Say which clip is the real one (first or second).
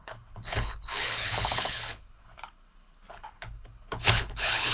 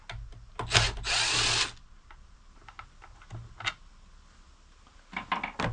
second